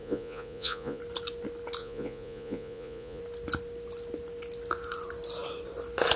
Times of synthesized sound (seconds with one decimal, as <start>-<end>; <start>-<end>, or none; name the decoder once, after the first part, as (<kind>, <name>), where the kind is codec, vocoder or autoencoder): 0.0-1.0 (vocoder, Vocos); 1.8-3.2